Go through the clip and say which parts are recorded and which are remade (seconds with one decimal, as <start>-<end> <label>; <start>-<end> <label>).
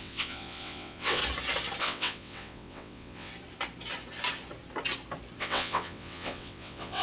0.0-1.2 remade; 1.2-1.8 recorded; 1.8-3.3 remade; 3.3-5.4 recorded; 5.4-7.0 remade